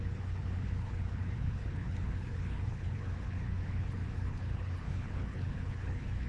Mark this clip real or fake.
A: fake